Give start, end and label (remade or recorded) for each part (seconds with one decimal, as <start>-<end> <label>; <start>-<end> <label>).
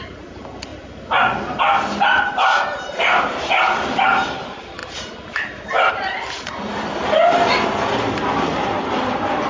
0.0-9.5 recorded